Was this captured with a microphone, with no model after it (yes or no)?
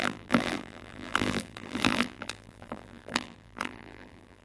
no